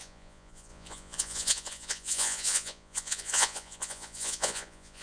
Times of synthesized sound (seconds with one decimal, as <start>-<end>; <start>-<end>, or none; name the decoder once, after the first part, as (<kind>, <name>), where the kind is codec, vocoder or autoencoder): 0.0-5.0 (vocoder, Vocos)